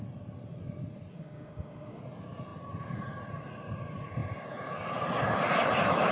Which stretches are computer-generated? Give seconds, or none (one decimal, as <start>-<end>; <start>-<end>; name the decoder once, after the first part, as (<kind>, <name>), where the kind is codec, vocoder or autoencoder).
1.1-2.0 (autoencoder, DAC-VAE)

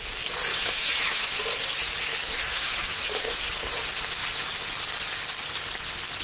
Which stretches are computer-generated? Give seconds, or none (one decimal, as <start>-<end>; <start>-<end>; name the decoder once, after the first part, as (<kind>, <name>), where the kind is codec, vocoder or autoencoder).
0.5-1.4 (autoencoder, DAC-VAE); 2.2-3.4

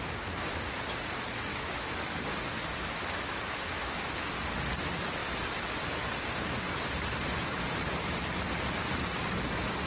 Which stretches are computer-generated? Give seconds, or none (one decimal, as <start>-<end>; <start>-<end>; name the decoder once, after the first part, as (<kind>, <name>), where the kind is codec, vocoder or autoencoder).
1.5-4.4 (autoencoder, DAC-VAE)

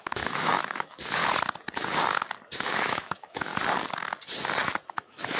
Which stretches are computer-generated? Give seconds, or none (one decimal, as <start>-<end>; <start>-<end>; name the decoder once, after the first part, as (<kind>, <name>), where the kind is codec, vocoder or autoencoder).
0.0-1.2 (autoencoder, DAC-VAE); 2.6-3.5; 4.9-5.4

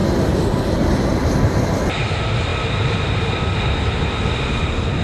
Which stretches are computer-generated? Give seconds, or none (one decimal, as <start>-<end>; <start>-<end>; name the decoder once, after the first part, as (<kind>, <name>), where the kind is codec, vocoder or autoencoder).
none

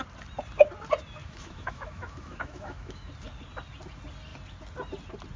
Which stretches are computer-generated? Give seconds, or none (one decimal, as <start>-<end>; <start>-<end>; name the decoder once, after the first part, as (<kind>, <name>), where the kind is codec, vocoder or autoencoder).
1.2-3.1 (autoencoder, DAC-VAE)

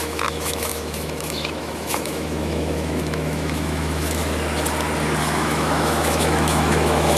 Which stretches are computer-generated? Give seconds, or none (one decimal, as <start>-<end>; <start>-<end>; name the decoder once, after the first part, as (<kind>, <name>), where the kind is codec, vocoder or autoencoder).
0.0-4.2 (autoencoder, DAC-VAE); 5.2-7.2